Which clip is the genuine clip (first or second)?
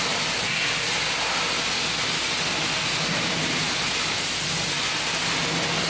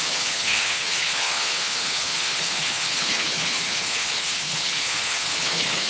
first